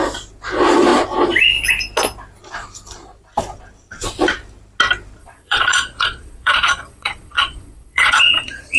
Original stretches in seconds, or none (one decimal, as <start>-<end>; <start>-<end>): 0.0-5.2

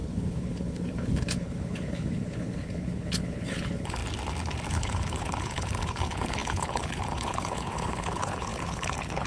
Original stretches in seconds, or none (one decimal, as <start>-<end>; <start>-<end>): 4.0-4.7